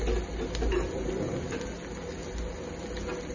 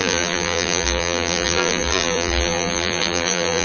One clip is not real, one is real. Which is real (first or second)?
first